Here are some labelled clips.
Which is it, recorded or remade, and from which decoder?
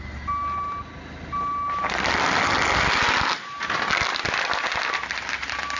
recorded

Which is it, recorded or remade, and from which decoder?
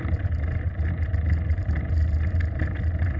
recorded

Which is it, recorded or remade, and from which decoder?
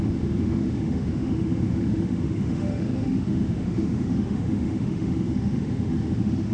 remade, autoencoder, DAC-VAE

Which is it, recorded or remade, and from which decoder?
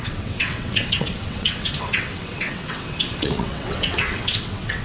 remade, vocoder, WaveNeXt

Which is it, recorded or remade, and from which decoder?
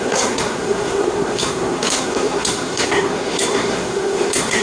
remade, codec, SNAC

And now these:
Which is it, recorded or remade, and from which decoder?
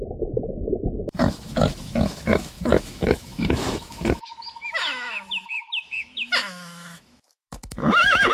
remade, autoencoder, DAC-VAE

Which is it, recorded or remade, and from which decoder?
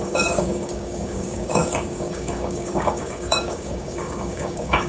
remade, codec, DAC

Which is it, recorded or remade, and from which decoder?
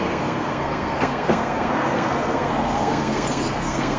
remade, codec, SNAC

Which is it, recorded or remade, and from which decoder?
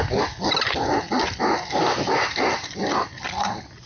recorded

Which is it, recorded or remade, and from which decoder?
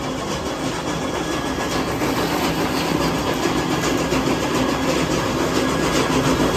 recorded